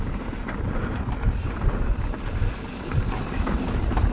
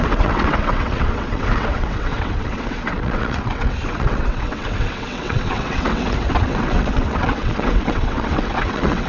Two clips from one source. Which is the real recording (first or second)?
first